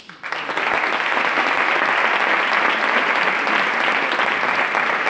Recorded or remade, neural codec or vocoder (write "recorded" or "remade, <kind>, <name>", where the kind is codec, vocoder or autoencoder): recorded